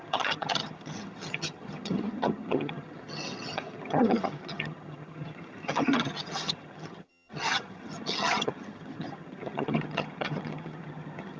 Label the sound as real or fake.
fake